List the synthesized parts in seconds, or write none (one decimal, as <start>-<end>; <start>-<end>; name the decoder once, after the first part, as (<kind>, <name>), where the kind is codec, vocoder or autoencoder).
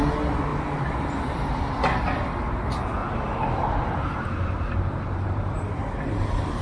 0.5-1.2 (vocoder, BigVGAN v2); 3.0-6.6